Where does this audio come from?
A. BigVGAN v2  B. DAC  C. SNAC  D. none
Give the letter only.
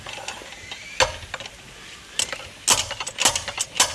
D